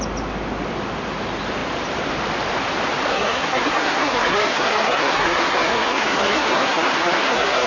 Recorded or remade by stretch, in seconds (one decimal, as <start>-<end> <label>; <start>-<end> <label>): 0.0-3.1 recorded; 3.1-7.7 remade